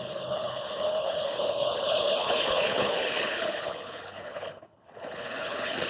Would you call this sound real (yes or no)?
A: no